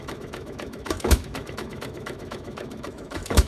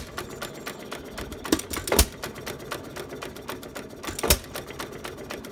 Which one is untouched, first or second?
second